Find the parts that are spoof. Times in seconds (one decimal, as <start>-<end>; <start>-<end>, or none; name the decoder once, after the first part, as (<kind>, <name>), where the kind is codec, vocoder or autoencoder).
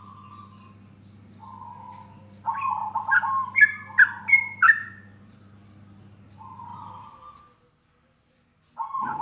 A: none